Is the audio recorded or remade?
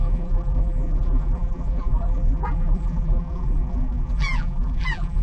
remade